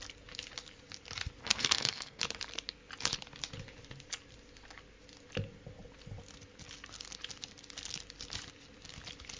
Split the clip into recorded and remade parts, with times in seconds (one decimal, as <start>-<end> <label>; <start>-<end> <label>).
0.0-1.4 recorded; 1.4-2.2 remade; 2.2-9.4 recorded